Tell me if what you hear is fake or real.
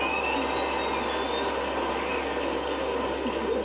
real